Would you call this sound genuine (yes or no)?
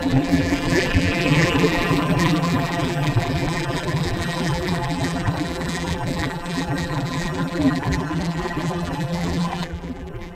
no